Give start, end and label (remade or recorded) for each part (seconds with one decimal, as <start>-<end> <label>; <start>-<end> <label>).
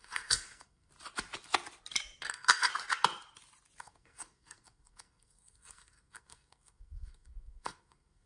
0.0-0.9 remade; 0.9-2.3 recorded; 2.3-2.7 remade; 2.7-3.8 recorded; 3.8-8.3 remade